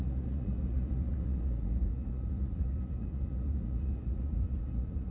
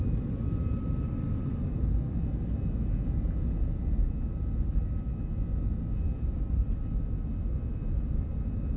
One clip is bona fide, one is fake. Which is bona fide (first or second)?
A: second